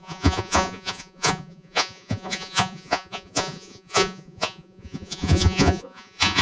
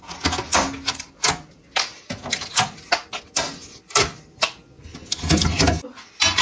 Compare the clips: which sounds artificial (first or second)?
first